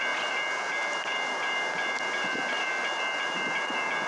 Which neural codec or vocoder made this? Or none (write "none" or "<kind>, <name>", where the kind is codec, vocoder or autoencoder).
none